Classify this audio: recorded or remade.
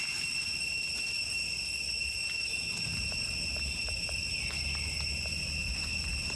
recorded